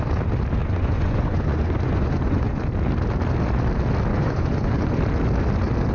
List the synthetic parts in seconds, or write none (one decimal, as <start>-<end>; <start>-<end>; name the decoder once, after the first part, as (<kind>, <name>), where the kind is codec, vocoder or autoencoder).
0.6-2.6 (vocoder, Vocos); 4.1-5.0